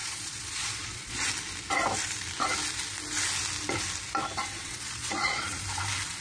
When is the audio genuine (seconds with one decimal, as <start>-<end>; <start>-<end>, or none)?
1.3-4.5; 5.6-6.2